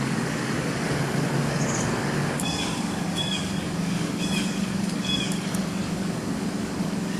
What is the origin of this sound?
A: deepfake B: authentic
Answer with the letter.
A